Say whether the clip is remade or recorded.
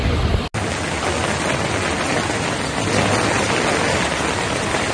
recorded